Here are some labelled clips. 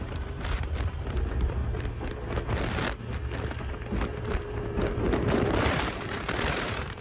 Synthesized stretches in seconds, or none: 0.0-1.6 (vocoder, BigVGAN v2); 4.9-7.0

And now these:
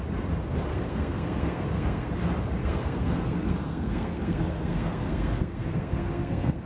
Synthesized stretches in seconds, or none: 0.7-2.1 (codec, SNAC); 2.6-6.7

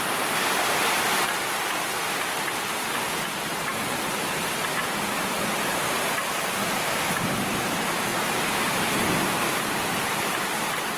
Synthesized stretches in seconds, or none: 0.0-11.0 (vocoder, BigVGAN v2)

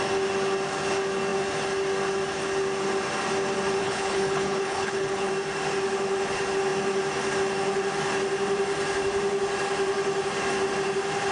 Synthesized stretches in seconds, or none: 3.8-5.3 (codec, HILCodec)

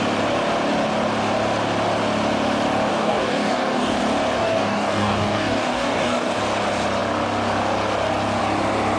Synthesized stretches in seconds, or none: 2.9-4.0 (codec, DAC); 4.4-6.4

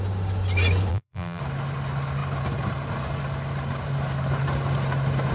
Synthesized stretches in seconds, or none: 0.9-1.4 (vocoder, BigVGAN v2)